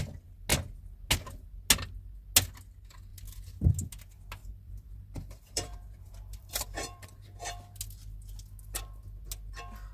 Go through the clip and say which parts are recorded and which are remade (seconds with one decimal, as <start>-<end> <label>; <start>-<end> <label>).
0.0-4.4 recorded; 4.4-7.4 remade; 7.4-9.9 recorded